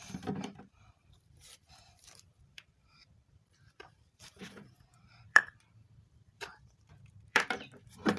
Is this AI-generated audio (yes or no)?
yes